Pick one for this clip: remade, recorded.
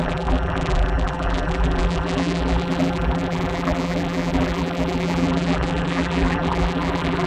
remade